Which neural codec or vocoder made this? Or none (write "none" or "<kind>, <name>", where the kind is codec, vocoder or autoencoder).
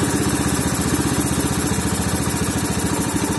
none